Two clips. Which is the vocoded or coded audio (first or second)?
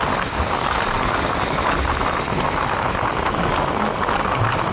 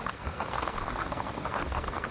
second